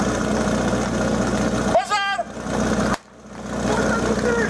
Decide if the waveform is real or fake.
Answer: real